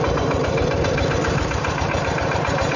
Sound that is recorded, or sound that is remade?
remade